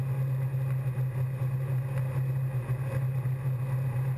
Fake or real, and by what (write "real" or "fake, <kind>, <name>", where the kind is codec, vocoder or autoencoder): real